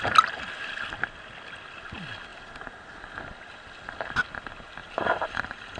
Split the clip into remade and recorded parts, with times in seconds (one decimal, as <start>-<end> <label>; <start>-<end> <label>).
0.0-4.8 recorded; 4.8-5.8 remade